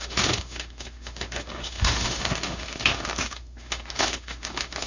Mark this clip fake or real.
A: fake